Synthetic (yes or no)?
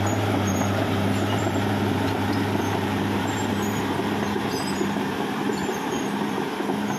yes